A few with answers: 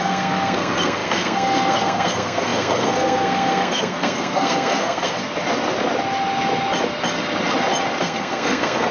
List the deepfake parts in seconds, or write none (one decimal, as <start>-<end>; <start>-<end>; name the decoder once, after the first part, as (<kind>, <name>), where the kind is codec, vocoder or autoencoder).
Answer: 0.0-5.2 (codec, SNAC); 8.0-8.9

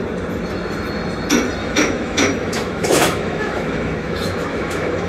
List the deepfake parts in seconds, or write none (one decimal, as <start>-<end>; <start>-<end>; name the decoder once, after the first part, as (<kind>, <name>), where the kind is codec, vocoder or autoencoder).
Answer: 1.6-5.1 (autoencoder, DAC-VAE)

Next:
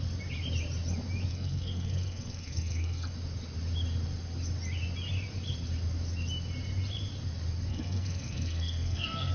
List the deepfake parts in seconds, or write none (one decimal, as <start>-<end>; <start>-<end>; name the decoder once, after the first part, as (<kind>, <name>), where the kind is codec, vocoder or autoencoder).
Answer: 1.3-3.1 (codec, SNAC); 7.7-9.3